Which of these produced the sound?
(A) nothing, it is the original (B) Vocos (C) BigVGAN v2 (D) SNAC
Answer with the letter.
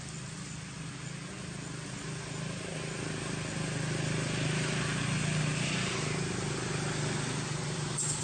A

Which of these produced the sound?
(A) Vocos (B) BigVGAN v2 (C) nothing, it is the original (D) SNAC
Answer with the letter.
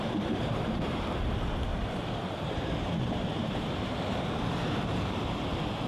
B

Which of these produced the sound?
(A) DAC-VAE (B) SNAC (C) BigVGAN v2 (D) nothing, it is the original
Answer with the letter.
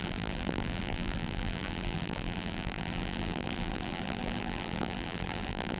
C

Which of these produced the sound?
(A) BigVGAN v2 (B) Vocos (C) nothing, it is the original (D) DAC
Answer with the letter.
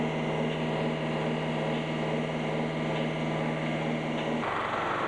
C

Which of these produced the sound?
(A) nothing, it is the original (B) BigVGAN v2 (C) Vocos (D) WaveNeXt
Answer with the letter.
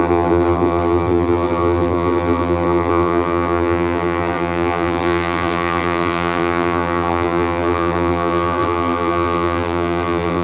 B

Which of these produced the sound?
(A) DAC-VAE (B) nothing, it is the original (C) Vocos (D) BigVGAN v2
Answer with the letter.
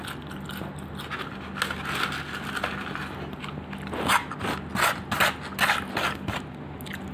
B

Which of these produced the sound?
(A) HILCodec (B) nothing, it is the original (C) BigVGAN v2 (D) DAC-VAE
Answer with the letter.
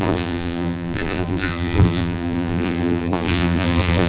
C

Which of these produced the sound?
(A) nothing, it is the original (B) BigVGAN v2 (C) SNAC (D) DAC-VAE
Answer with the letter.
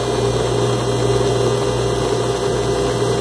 A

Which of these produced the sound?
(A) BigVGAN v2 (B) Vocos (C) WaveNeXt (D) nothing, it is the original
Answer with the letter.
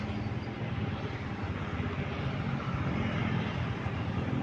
D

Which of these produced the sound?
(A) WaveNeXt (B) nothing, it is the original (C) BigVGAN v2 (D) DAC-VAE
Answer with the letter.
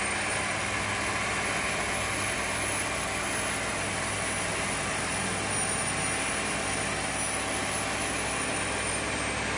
B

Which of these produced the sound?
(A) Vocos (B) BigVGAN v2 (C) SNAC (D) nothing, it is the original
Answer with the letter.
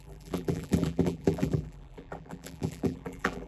B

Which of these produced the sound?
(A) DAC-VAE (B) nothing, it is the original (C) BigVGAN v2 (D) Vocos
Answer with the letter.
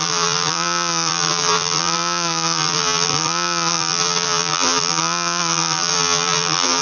C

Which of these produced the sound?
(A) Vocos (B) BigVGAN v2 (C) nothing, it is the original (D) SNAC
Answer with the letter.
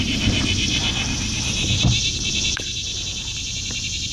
B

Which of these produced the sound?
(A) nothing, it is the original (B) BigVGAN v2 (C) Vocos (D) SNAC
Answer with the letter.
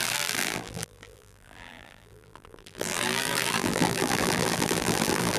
B